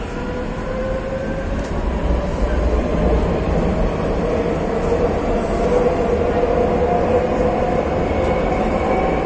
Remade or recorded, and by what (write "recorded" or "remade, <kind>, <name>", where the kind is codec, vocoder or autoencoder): recorded